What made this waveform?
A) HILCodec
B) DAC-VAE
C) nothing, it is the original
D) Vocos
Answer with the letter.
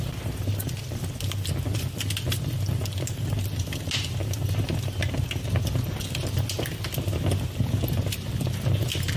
C